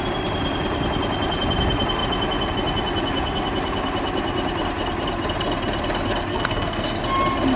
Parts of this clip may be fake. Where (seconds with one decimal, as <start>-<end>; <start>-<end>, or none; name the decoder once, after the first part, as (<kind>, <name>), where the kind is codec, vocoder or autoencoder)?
6.3-7.0 (codec, SNAC)